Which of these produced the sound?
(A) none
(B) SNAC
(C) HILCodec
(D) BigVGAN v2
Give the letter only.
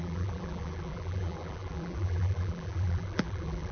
D